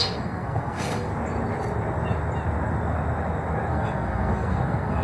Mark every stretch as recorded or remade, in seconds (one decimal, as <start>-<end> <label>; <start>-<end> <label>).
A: 0.0-1.1 remade; 1.1-3.7 recorded; 3.7-5.0 remade